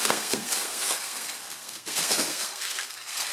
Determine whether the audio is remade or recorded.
remade